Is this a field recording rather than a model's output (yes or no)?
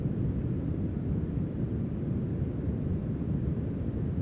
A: yes